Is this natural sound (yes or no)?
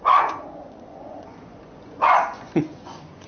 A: no